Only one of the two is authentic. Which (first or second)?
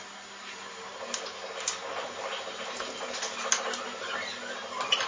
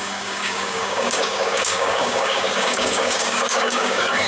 first